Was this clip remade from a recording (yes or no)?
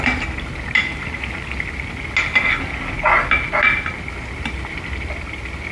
no